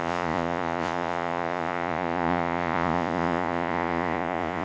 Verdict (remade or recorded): remade